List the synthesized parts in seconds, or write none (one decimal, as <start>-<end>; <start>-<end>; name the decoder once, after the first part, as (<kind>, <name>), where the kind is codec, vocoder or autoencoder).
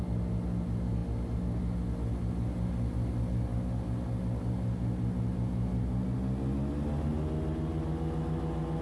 none